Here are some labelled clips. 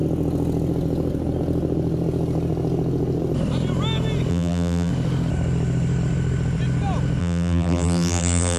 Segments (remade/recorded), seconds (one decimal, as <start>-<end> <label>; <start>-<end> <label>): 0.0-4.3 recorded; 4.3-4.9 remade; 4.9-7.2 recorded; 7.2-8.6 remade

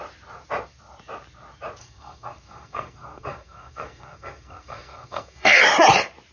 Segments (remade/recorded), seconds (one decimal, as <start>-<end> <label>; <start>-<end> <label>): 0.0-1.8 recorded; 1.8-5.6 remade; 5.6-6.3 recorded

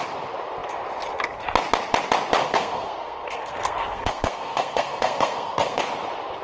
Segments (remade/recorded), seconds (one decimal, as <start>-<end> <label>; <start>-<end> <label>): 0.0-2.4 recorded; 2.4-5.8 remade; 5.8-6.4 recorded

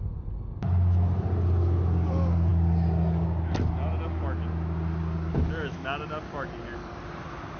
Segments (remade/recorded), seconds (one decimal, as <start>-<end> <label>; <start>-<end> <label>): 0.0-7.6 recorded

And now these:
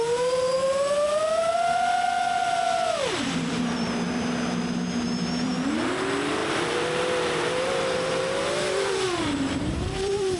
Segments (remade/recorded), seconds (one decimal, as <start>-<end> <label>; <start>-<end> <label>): 0.0-6.4 recorded; 6.4-10.4 remade

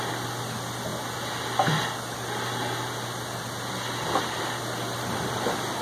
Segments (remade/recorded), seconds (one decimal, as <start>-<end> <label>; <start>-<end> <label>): 0.0-0.9 remade; 0.9-4.4 recorded; 4.4-5.8 remade

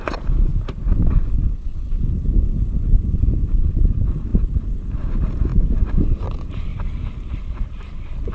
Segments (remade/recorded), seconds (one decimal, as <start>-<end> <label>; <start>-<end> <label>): 0.0-0.5 remade; 0.5-3.4 recorded; 3.4-6.7 remade; 6.7-7.4 recorded; 7.4-8.3 remade

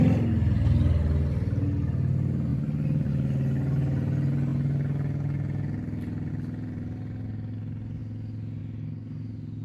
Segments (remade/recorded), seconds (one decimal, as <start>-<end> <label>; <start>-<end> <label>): 0.0-9.6 recorded